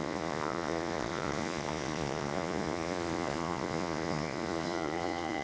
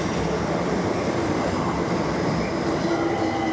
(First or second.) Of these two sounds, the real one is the second